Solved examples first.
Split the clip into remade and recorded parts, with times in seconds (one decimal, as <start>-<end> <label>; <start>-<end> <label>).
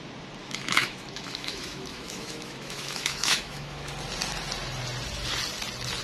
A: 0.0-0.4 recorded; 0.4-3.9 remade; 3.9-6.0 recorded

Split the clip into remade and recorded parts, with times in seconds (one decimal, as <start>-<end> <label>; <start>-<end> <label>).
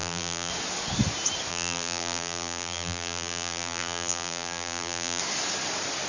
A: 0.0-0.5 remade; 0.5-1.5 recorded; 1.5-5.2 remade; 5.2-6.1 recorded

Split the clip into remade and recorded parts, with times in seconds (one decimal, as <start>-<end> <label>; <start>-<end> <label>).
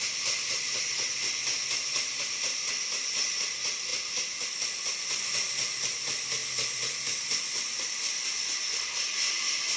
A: 0.0-6.4 recorded; 6.4-8.2 remade; 8.2-9.8 recorded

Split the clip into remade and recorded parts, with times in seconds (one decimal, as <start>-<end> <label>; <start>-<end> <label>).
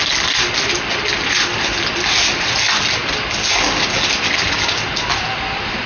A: 0.0-5.9 recorded